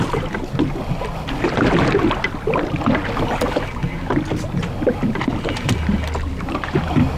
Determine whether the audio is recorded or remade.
recorded